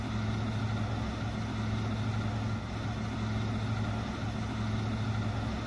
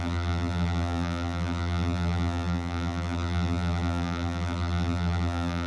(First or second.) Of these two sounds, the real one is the first